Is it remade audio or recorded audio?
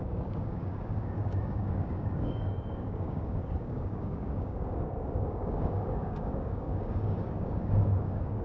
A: remade